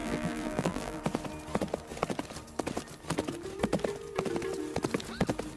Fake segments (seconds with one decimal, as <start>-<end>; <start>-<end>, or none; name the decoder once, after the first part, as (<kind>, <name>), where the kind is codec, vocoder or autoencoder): 0.0-1.0 (vocoder, BigVGAN v2)